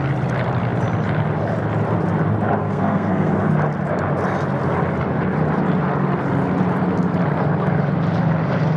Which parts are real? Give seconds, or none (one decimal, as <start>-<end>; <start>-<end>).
0.0-2.6; 3.3-8.8